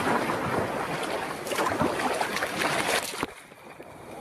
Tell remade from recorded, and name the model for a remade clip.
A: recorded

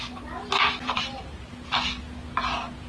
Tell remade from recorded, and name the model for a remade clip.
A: recorded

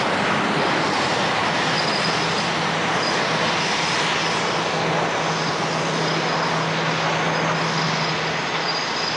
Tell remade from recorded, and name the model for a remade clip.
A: recorded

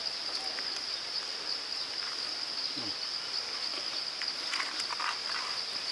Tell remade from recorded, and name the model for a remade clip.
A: recorded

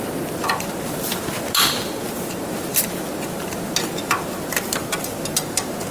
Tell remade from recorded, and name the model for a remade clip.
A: recorded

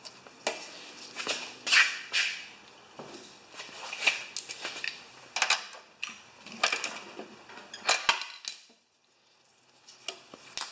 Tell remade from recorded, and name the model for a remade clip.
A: recorded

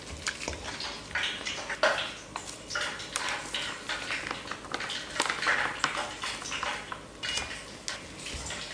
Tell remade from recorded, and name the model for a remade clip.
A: recorded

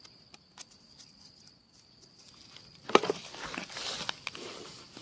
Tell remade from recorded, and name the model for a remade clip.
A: recorded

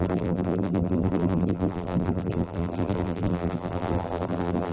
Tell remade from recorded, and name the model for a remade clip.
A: remade, vocoder, BigVGAN v2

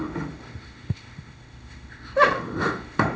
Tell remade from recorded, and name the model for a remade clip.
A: remade, autoencoder, DAC-VAE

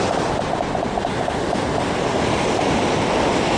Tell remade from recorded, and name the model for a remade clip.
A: recorded